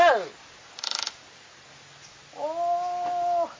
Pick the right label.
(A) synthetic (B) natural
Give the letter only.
B